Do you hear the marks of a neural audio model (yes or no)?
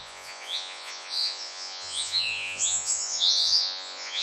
yes